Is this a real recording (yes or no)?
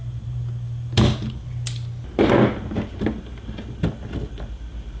yes